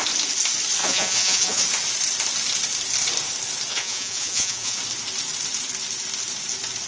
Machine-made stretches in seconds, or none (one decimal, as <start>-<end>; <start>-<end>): 0.8-1.6; 3.7-4.8